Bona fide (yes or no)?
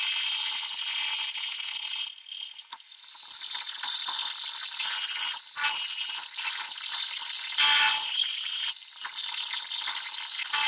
yes